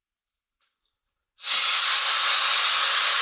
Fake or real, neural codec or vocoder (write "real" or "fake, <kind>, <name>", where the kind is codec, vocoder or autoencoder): real